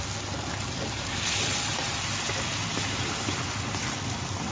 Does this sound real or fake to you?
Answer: real